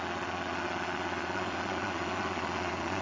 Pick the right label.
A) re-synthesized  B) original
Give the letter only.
A